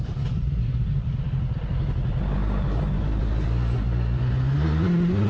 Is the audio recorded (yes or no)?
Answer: yes